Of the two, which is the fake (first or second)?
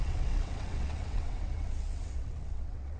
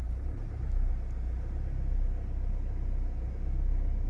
first